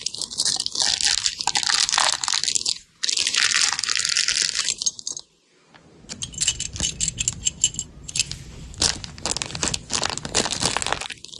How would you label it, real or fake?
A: real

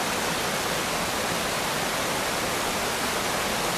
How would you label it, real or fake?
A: real